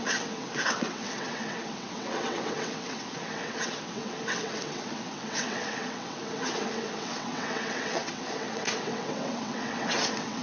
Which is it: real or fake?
fake